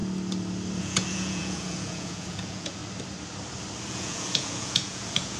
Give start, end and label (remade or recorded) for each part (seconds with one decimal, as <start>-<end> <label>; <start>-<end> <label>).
0.0-0.8 recorded; 0.8-2.8 remade; 2.8-3.9 recorded; 3.9-5.4 remade